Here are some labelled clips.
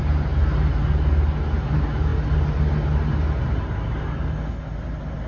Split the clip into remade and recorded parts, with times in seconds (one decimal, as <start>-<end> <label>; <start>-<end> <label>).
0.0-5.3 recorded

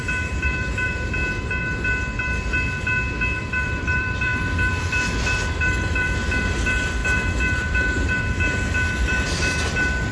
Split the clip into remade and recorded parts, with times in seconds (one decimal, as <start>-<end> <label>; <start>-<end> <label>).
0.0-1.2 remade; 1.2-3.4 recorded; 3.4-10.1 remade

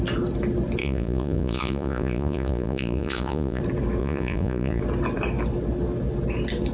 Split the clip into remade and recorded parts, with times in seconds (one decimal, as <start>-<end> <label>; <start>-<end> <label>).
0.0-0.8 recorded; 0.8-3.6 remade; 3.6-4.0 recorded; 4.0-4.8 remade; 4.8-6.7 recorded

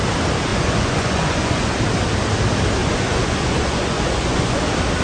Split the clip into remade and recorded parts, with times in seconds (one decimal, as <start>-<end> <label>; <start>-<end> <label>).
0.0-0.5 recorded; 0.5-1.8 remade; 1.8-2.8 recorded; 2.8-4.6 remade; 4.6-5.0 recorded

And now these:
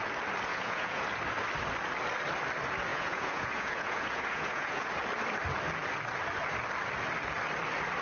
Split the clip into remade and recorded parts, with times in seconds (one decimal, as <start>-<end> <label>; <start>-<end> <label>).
0.0-0.5 recorded; 0.5-1.0 remade; 1.0-2.9 recorded; 2.9-4.9 remade; 4.9-8.0 recorded

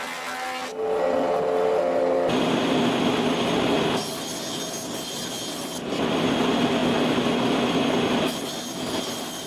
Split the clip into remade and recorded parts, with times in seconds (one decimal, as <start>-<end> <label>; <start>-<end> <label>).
0.0-9.5 recorded

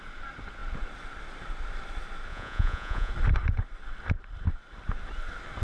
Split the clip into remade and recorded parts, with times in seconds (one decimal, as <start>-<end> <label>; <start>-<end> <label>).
0.0-2.3 recorded; 2.3-3.1 remade; 3.1-5.6 recorded

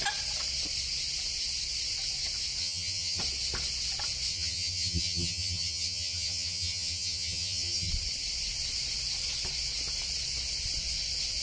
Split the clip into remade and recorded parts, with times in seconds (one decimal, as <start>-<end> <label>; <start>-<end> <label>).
0.0-2.6 recorded; 2.6-3.2 remade; 3.2-4.3 recorded; 4.3-7.9 remade; 7.9-11.4 recorded